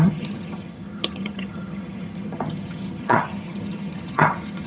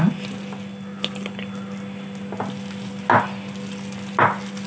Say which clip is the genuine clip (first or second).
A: second